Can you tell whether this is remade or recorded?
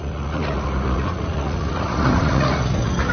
remade